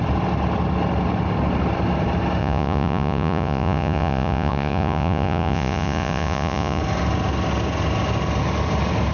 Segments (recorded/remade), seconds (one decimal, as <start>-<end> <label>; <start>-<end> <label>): 0.0-2.4 recorded; 2.4-6.8 remade; 6.8-9.1 recorded